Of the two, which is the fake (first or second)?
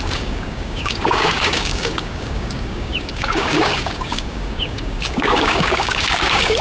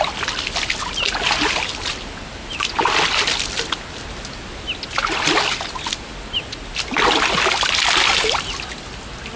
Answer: first